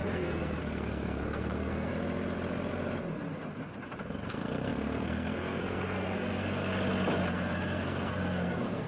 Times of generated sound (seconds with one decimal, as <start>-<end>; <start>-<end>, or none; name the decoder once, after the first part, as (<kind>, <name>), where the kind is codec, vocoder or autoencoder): 0.0-1.9 (codec, SNAC); 4.3-6.7; 7.3-8.9